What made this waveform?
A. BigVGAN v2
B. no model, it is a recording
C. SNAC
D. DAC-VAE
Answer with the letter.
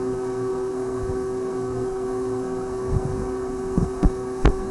C